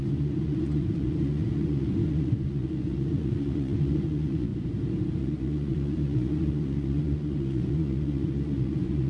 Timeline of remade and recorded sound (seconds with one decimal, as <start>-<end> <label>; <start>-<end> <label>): 0.0-4.5 remade; 4.5-5.2 recorded; 5.2-9.1 remade